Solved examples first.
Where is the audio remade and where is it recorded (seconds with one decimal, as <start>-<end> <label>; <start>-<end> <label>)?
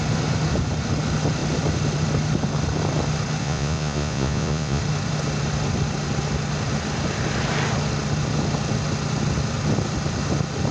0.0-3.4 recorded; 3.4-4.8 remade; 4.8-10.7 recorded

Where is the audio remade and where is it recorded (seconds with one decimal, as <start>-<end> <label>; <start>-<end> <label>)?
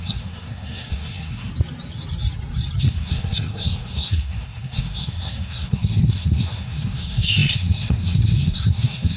0.0-1.5 remade; 1.5-2.8 recorded; 2.8-9.2 remade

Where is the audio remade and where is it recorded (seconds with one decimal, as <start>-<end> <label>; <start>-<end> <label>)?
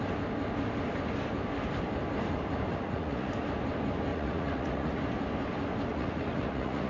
0.0-2.7 recorded; 2.7-3.3 remade; 3.3-4.1 recorded; 4.1-5.0 remade; 5.0-5.9 recorded; 5.9-6.9 remade